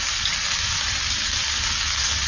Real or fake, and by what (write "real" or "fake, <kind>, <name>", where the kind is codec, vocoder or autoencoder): real